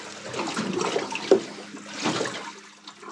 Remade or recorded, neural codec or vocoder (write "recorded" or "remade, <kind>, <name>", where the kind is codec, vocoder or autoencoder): recorded